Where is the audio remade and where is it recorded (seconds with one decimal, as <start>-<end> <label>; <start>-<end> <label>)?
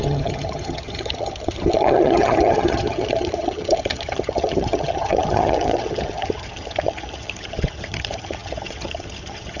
0.0-9.6 remade